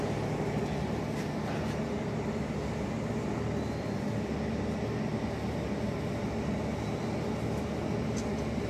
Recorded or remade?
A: recorded